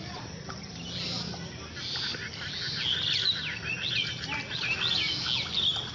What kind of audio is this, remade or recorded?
recorded